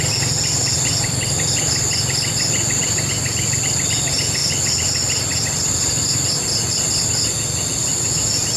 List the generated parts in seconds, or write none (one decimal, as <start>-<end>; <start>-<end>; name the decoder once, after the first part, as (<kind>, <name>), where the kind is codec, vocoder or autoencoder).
none